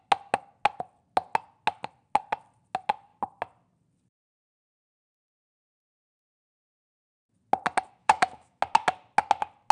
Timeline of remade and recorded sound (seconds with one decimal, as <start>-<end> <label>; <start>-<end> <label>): 0.0-8.0 recorded; 8.0-8.6 remade; 8.6-9.7 recorded